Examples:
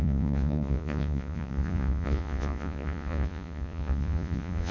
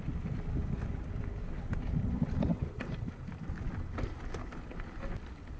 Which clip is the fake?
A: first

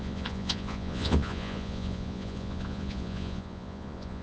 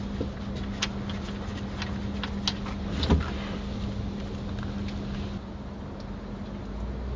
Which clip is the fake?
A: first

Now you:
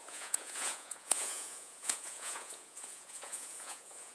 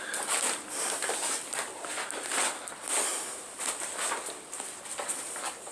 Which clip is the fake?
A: first